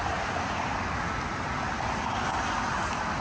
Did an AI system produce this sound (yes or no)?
no